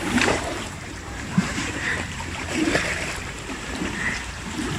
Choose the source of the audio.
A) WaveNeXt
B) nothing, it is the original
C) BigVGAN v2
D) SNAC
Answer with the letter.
C